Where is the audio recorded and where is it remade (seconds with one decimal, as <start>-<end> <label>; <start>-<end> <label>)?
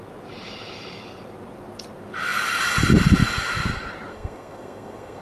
0.0-4.1 recorded; 4.1-5.2 remade